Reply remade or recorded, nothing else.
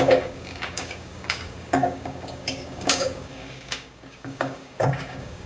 remade